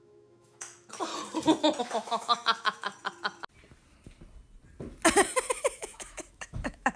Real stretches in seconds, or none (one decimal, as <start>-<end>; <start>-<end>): 1.1-1.8; 2.9-5.5